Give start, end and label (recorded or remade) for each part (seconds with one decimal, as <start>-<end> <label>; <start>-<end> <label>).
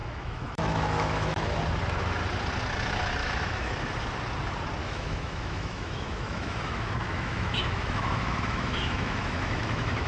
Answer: 0.0-1.6 remade; 1.6-3.2 recorded; 3.2-3.7 remade; 3.7-4.8 recorded; 4.8-10.1 remade